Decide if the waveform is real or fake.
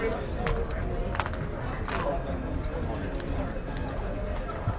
real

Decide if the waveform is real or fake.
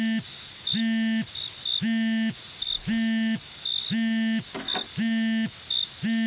real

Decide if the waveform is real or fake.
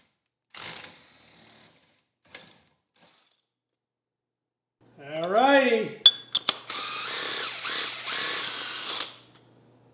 real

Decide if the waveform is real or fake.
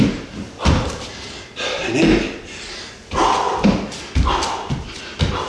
real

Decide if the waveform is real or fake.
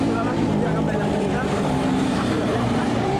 fake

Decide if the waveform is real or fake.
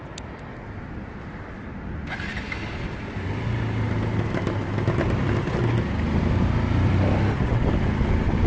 real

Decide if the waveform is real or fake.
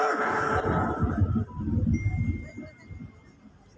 real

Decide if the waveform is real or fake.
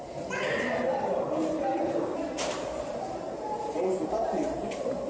fake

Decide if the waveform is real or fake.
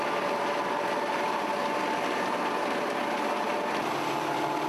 fake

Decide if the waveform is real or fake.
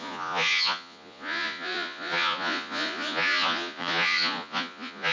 fake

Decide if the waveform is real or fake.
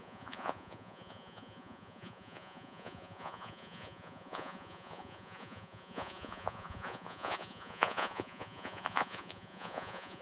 fake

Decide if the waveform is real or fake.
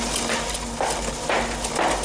real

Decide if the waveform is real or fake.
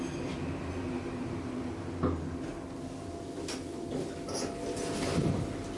real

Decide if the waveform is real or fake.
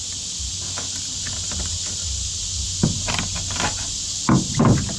real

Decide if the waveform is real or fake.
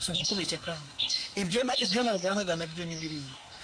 fake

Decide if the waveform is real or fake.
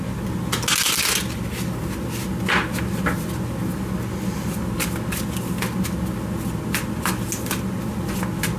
real